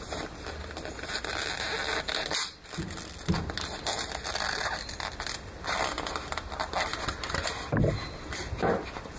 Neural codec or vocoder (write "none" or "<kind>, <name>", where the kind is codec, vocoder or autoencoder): none